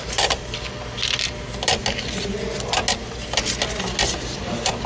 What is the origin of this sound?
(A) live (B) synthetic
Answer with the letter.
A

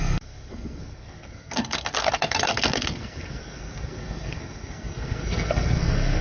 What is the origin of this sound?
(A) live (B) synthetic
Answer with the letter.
B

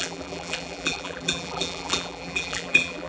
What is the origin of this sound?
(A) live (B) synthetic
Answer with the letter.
B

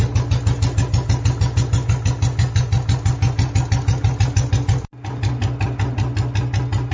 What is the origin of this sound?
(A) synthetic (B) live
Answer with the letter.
B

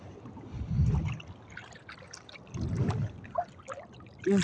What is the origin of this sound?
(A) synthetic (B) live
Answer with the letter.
B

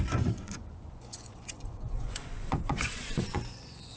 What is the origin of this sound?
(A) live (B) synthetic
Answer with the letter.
B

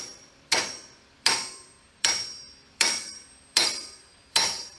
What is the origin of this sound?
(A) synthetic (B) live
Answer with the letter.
A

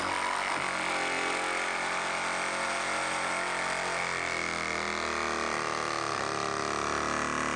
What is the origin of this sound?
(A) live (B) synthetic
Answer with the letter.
A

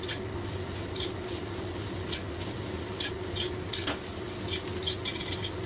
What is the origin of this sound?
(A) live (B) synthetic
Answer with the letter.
A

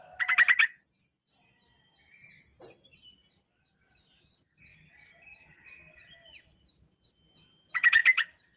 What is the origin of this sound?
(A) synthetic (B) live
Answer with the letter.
B